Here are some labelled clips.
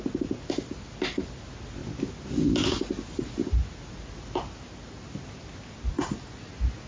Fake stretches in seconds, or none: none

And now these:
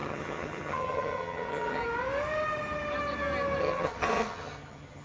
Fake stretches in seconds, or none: 0.0-1.8 (vocoder, HiFi-GAN); 3.6-5.0

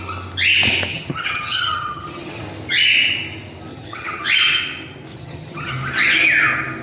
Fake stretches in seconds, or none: 0.9-2.4 (vocoder, HiFi-GAN); 3.7-4.2; 5.1-5.7

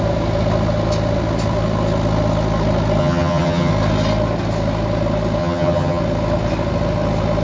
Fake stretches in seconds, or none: 3.0-3.7 (vocoder, HiFi-GAN); 5.4-6.0

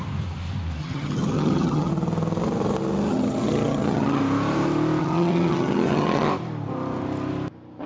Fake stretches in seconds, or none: 0.8-1.9 (vocoder, HiFi-GAN); 3.1-4.2; 5.0-6.3

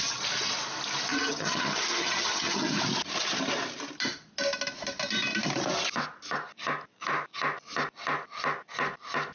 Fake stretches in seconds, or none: 1.1-2.8 (vocoder, HiFi-GAN)

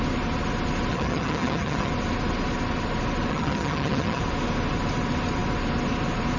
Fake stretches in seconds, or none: 0.9-1.9 (vocoder, HiFi-GAN); 3.3-4.2